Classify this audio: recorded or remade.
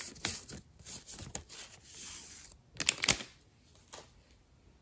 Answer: recorded